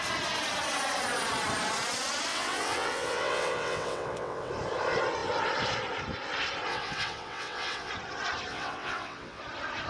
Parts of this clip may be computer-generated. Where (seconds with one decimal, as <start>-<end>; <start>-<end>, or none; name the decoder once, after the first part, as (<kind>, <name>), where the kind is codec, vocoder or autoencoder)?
2.3-4.5 (vocoder, WaveNeXt); 6.7-7.9; 8.5-9.4